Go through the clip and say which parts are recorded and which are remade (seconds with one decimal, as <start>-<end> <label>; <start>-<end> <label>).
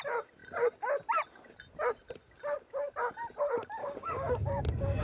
0.0-3.8 recorded; 3.8-4.6 remade; 4.6-5.0 recorded